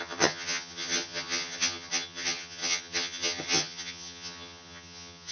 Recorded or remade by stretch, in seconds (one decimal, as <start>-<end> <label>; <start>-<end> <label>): 0.0-5.3 remade